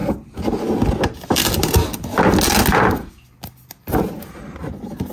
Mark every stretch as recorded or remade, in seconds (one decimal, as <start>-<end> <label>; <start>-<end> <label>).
0.0-5.1 recorded